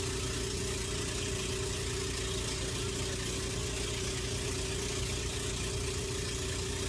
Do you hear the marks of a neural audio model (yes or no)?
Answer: no